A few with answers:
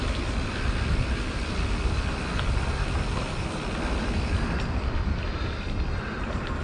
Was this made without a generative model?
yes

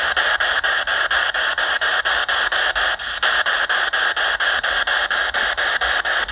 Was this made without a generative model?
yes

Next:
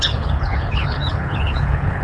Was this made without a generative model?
no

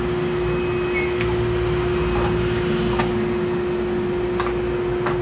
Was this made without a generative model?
yes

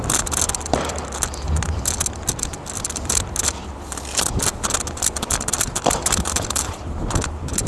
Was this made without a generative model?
yes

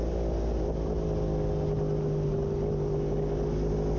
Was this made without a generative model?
yes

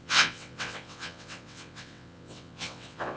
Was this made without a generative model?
no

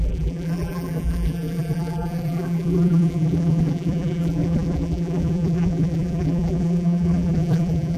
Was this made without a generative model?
no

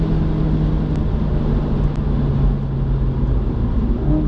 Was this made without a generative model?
yes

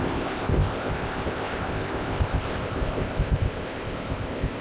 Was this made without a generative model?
no